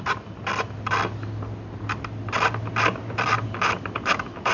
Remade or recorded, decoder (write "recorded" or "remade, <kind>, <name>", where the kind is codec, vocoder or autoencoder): recorded